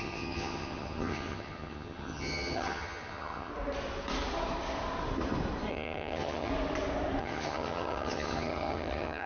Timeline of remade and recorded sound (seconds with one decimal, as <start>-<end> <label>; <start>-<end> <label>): 0.0-3.5 remade; 3.5-5.7 recorded; 5.7-6.5 remade; 6.5-7.2 recorded; 7.2-9.3 remade